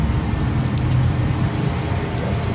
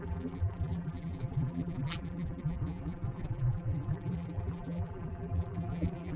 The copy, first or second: second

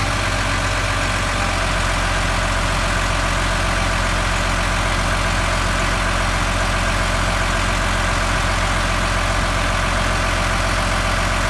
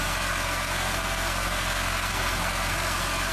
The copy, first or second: second